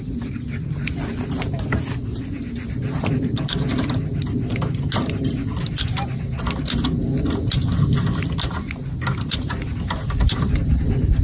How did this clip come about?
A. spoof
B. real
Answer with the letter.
B